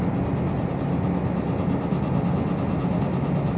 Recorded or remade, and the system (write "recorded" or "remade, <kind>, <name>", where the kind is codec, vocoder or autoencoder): recorded